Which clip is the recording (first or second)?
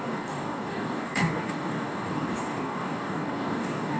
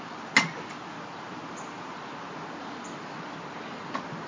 second